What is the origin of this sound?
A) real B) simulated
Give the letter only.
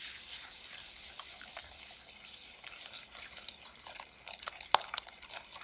A